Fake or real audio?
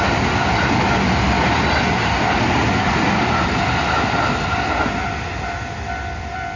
real